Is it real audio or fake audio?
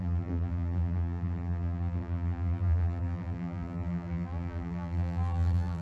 fake